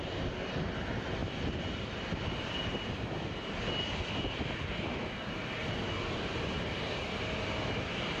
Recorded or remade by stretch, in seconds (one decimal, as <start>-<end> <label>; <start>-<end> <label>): 0.0-8.2 recorded